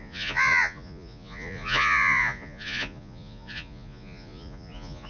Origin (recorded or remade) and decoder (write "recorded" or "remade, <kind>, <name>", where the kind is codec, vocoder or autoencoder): remade, vocoder, Vocos